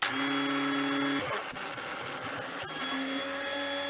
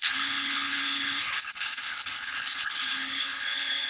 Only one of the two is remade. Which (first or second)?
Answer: second